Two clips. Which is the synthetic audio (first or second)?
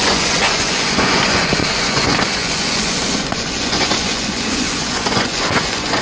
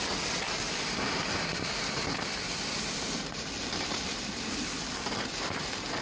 first